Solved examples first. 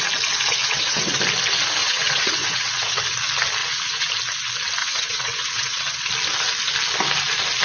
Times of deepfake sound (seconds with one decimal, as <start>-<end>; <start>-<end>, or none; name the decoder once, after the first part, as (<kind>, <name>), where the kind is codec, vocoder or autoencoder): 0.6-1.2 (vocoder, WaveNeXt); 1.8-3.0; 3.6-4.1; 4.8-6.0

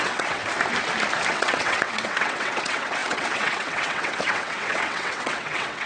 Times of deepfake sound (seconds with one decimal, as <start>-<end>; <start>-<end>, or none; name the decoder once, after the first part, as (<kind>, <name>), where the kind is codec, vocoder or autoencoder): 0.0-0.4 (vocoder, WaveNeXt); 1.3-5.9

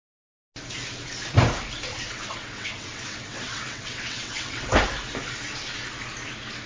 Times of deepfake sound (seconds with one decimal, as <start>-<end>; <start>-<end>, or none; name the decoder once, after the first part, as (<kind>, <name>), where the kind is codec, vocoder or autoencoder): 1.9-4.7 (vocoder, WaveNeXt)

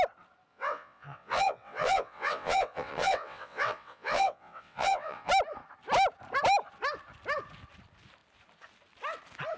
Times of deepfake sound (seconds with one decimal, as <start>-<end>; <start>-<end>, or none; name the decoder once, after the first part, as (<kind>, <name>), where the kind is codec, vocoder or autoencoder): 0.5-5.3 (vocoder, WaveNeXt)

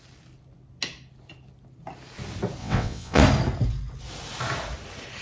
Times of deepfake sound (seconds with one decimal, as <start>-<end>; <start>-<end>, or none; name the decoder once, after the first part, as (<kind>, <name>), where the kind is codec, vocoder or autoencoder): 2.6-3.2 (vocoder, WaveNeXt)

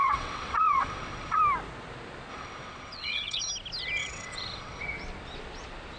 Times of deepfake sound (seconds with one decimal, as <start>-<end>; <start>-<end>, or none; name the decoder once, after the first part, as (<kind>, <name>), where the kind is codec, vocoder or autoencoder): 0.0-1.4 (vocoder, WaveNeXt); 2.3-3.5; 4.0-4.8